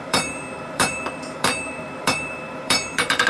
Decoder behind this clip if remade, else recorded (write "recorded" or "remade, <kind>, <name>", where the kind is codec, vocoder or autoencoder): remade, vocoder, BigVGAN v2